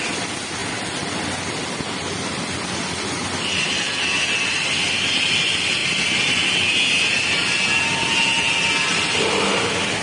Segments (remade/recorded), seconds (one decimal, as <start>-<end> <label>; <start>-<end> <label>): 0.0-10.0 recorded